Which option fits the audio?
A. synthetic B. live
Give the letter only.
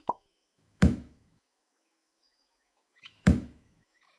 A